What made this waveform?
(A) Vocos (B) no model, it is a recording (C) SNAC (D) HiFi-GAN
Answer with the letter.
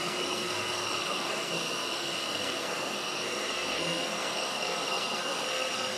C